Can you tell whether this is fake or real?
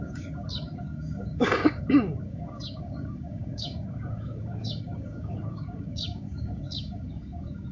fake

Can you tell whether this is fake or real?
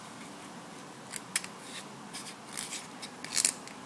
real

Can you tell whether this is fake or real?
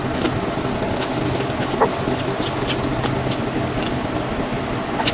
real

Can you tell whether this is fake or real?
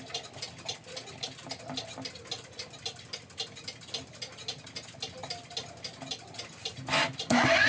real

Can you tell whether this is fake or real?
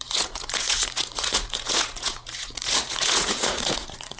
fake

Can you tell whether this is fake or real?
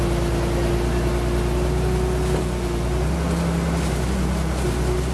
real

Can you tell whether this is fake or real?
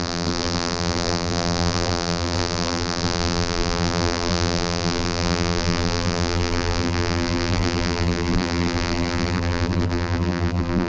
fake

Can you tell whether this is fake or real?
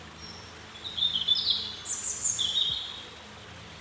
real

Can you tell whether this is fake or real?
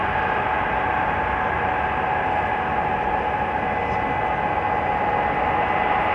real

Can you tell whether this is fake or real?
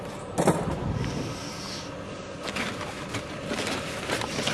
real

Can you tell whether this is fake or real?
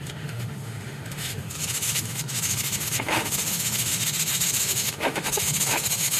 fake